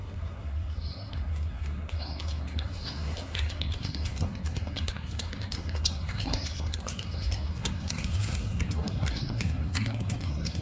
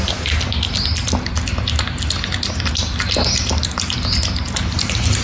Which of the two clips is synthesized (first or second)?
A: first